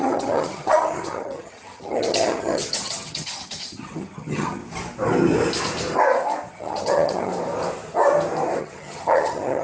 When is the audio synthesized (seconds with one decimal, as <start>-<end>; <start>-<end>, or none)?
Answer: 0.0-4.6; 6.5-7.3; 8.6-9.6